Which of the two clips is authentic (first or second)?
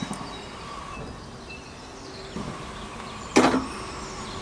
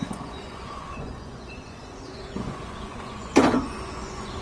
first